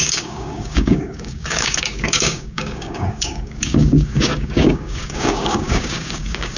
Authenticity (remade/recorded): remade